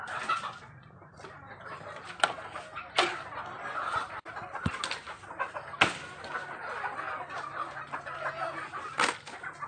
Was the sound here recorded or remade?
recorded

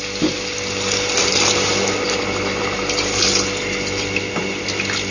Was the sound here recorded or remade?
recorded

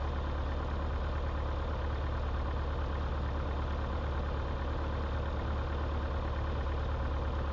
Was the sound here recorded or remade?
recorded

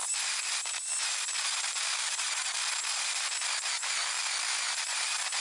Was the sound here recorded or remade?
recorded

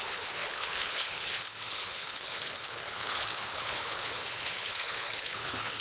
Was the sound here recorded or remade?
remade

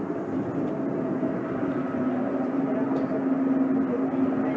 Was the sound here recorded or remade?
recorded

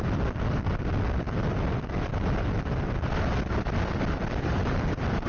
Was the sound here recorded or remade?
recorded